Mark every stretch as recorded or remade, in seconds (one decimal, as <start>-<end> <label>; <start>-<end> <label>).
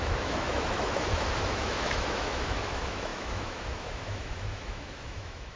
0.0-5.6 remade